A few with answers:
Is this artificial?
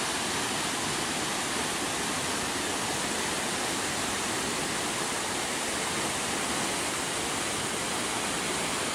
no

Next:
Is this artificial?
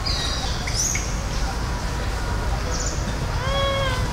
no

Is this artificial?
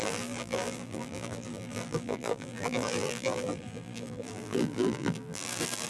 yes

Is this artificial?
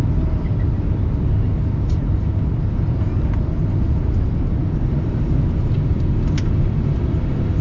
no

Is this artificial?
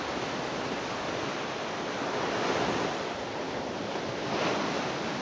yes